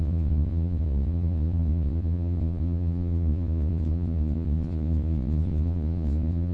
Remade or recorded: remade